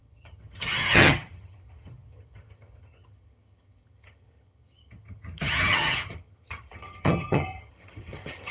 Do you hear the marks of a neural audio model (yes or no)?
yes